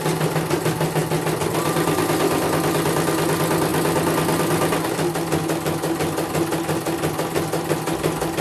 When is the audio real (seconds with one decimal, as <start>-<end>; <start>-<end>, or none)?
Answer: 0.0-8.4